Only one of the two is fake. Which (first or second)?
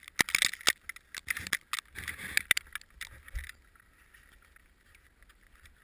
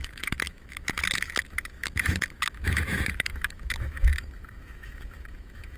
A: second